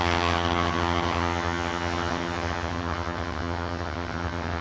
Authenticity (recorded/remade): remade